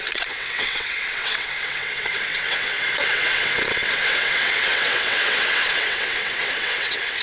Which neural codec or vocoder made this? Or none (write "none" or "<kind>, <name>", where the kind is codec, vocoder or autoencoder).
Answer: vocoder, WaveNeXt